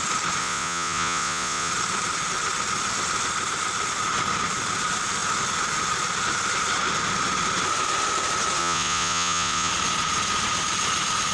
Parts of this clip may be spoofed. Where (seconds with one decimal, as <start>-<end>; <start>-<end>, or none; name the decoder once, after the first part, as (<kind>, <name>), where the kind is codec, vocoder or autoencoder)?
0.4-1.7 (vocoder, Vocos); 8.6-9.7